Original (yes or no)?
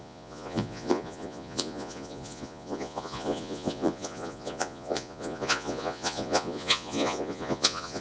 no